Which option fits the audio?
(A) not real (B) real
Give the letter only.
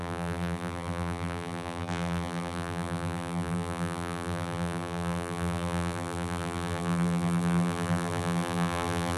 A